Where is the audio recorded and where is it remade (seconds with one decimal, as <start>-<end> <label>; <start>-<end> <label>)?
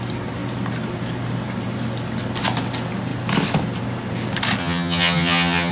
0.0-4.6 recorded; 4.6-5.7 remade